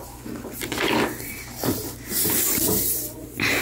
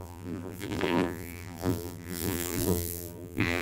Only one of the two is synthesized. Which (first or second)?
second